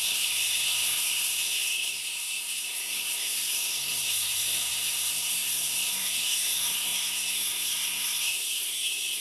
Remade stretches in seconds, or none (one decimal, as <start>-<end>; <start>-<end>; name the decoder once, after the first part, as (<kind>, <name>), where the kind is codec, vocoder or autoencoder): 0.0-9.2 (codec, SNAC)